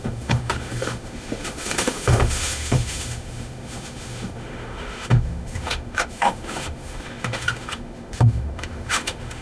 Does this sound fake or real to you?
fake